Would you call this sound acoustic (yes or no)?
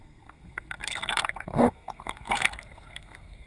no